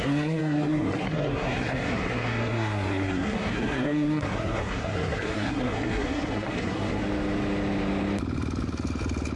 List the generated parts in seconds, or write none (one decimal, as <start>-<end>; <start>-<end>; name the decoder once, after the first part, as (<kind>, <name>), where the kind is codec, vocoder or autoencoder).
0.0-7.0 (codec, SNAC)